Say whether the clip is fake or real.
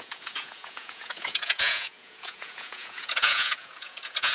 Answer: fake